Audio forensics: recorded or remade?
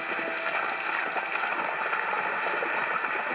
recorded